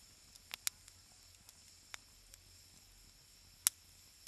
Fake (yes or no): no